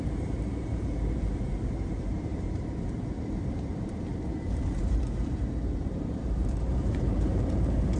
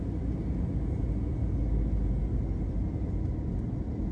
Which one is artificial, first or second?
first